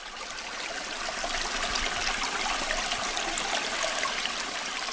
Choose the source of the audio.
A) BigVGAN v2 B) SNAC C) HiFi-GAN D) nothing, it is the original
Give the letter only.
D